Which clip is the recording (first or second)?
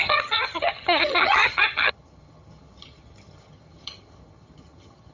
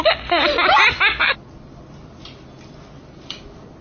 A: second